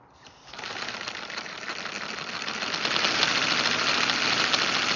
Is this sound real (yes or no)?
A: yes